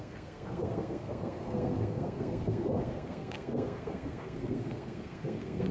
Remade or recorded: remade